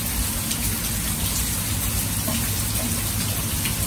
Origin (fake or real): real